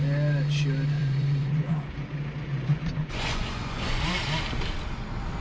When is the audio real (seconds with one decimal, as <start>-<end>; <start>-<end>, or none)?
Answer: 0.0-1.0; 2.1-2.5; 4.0-5.4